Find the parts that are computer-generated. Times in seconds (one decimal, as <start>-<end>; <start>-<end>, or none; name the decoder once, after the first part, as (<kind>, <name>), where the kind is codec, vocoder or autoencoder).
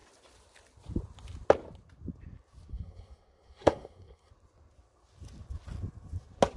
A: 2.7-4.3 (codec, SNAC)